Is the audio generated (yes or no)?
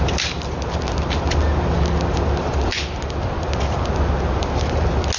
no